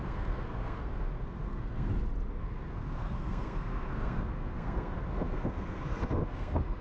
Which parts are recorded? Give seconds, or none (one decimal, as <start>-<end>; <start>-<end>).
1.9-2.4